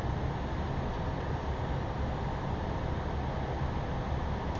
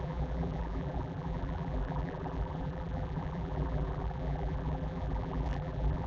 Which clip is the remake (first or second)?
second